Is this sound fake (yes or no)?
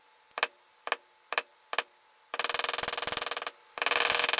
no